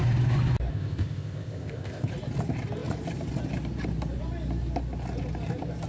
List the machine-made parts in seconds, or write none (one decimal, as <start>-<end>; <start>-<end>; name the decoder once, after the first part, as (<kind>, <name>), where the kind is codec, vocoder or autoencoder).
0.7-2.1 (codec, ZipCodec)